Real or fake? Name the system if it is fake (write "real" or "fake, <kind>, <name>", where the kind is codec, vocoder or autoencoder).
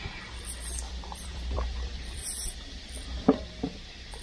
fake, vocoder, BigVGAN v2